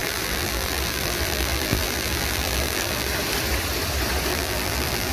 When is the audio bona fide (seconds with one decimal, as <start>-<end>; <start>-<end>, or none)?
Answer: 3.1-4.3